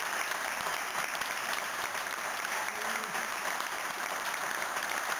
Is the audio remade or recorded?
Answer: remade